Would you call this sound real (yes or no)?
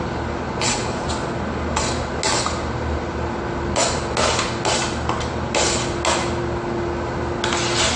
yes